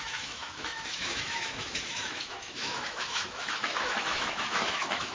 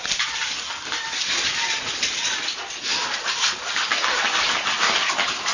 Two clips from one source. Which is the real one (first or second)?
second